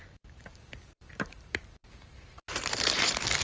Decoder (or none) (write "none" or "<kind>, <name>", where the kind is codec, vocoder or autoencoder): vocoder, BigVGAN v2